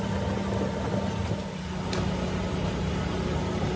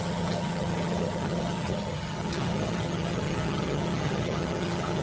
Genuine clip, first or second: first